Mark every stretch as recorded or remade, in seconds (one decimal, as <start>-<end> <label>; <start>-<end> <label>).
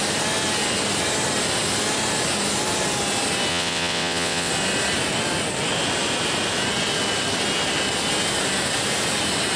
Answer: 0.0-3.5 recorded; 3.5-4.5 remade; 4.5-9.6 recorded